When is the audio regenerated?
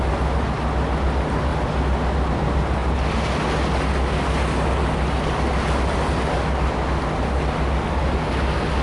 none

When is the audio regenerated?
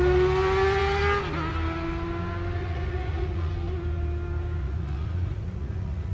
2.6-3.5 (vocoder, Vocos); 4.6-6.1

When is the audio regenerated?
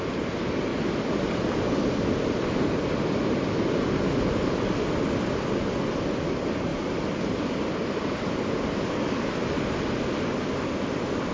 none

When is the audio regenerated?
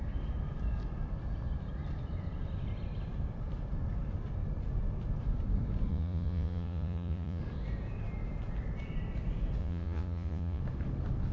5.9-7.4 (vocoder, Vocos); 9.6-10.6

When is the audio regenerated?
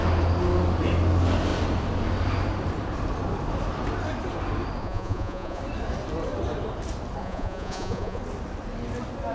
4.8-5.6 (vocoder, Vocos); 7.2-8.2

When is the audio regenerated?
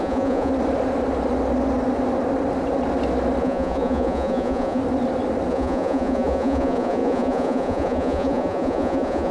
0.0-0.5 (vocoder, Vocos); 3.4-4.8; 5.5-9.3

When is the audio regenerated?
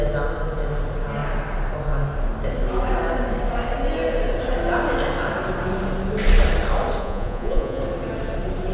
7.0-7.8 (vocoder, Vocos)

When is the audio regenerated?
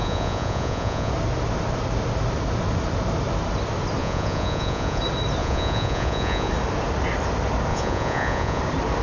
0.0-1.1 (vocoder, Vocos); 4.0-5.0; 5.4-6.5; 7.7-8.6